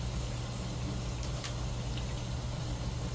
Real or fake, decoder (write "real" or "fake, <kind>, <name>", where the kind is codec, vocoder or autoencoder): real